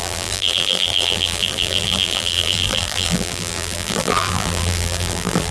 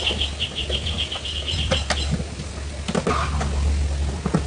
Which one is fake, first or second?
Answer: first